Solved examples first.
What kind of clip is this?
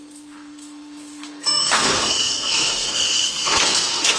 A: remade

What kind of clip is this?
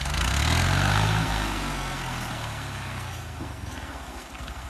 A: remade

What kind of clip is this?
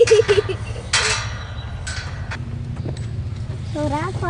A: recorded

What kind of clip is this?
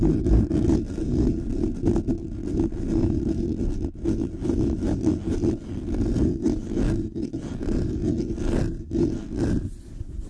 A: recorded